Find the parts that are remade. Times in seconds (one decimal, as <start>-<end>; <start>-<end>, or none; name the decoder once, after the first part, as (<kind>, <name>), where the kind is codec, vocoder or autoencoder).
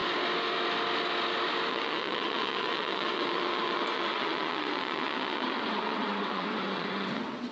1.7-7.5 (vocoder, WaveNeXt)